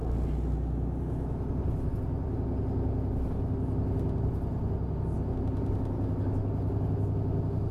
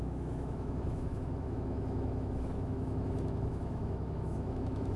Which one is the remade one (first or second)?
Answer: second